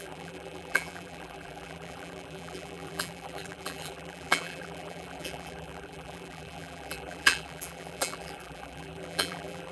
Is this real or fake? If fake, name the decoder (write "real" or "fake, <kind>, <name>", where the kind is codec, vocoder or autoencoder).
fake, vocoder, BigVGAN v2